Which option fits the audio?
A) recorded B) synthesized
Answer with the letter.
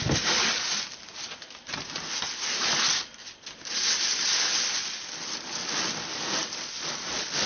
A